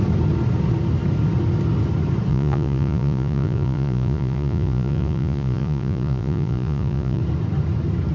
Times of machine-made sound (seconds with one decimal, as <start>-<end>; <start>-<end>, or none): 2.3-7.2